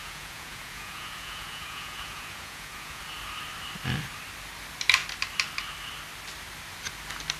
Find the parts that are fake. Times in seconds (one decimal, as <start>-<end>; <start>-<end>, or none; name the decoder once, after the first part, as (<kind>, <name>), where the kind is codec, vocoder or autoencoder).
0.0-3.0 (vocoder, Vocos)